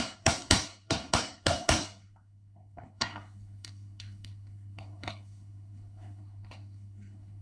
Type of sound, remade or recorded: remade